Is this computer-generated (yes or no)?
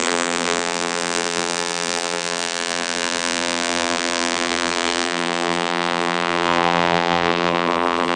yes